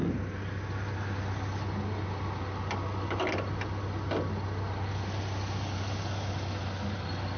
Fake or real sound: real